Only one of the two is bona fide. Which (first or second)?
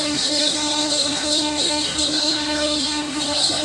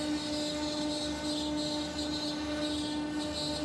second